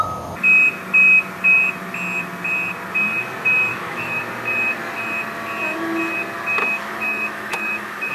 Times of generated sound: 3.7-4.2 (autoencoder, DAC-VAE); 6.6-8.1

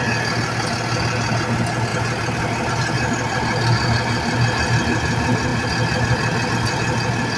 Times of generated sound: none

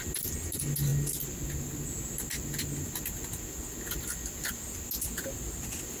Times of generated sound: none

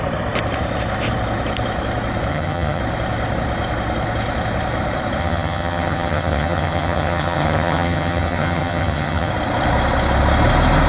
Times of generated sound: 2.3-2.8 (vocoder, HiFi-GAN); 5.2-9.3

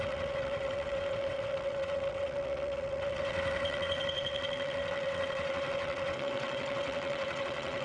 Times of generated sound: 0.0-7.8 (vocoder, WaveNeXt)

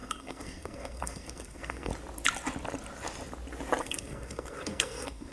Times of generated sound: 0.0-1.9 (codec, SNAC); 3.8-5.3